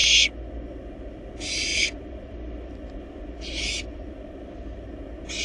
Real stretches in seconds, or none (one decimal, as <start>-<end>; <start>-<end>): 0.0-1.7; 4.9-5.4